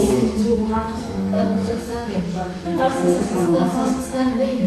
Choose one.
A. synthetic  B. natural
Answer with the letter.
A